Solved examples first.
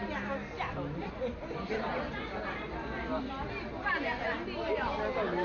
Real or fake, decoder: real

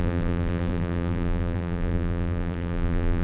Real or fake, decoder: fake, vocoder, BigVGAN v2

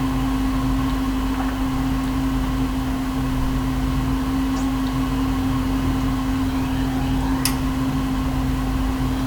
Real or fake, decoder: real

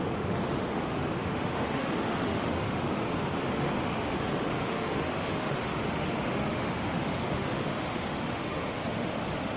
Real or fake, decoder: fake, autoencoder, DAC-VAE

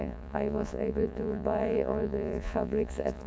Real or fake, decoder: fake, vocoder, Vocos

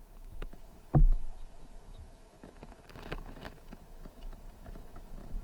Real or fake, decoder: fake, autoencoder, DAC-VAE